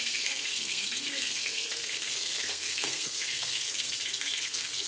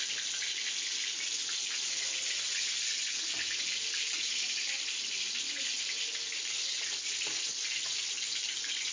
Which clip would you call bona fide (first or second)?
second